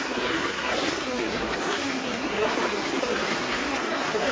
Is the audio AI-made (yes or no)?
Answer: yes